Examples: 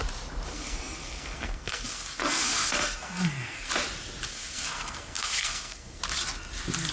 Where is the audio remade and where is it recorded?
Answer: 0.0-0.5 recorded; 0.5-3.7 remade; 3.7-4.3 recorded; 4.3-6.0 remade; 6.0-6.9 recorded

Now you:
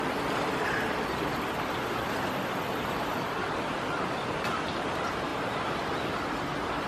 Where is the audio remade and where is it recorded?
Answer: 0.0-5.3 recorded; 5.3-5.8 remade; 5.8-6.9 recorded

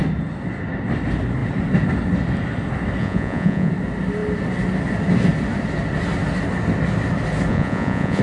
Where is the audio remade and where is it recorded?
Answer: 0.0-3.0 recorded; 3.0-3.7 remade; 3.7-7.5 recorded; 7.5-8.2 remade

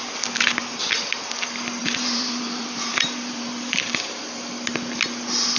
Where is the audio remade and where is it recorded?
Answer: 0.0-1.8 recorded; 1.8-4.2 remade; 4.2-5.6 recorded

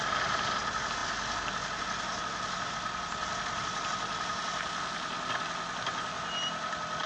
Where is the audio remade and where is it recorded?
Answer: 0.0-7.1 recorded